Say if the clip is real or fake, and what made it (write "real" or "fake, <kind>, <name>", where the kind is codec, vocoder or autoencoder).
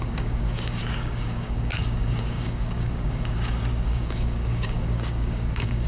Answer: fake, codec, DAC